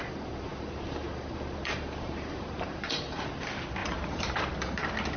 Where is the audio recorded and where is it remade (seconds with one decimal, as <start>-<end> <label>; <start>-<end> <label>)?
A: 0.0-0.5 recorded; 0.5-3.3 remade; 3.3-3.8 recorded; 3.8-4.4 remade; 4.4-5.2 recorded